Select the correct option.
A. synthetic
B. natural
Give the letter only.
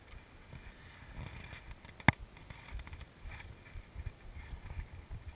B